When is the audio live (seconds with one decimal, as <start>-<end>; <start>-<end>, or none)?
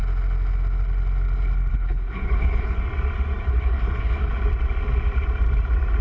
0.0-1.7; 2.8-3.5; 4.3-6.0